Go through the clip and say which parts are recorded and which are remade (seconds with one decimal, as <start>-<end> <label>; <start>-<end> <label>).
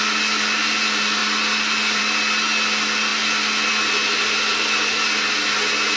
0.0-6.0 recorded